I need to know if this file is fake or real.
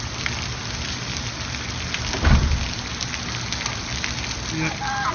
real